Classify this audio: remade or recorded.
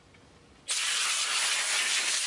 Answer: recorded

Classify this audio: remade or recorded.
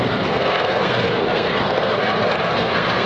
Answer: remade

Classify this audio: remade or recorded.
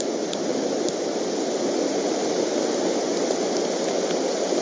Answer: recorded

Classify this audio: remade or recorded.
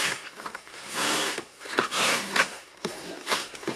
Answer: remade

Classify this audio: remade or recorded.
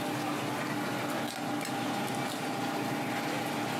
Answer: recorded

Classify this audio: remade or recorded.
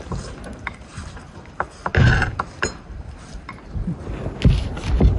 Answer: recorded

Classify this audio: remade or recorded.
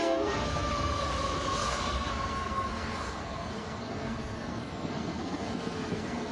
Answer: remade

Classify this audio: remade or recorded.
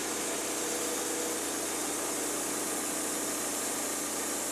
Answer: recorded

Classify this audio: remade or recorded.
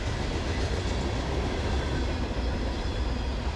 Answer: recorded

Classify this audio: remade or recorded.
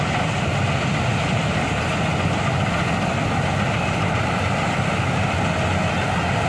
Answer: recorded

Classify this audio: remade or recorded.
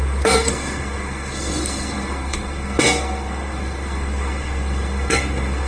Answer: remade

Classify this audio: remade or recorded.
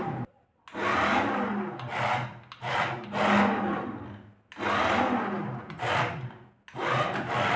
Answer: recorded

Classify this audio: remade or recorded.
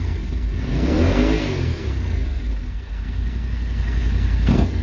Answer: remade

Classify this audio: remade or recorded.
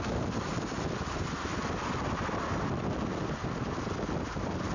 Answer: recorded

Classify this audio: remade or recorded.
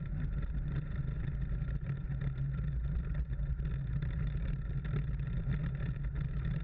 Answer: recorded